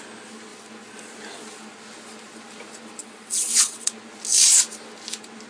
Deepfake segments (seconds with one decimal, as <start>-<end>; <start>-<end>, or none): 3.0-3.9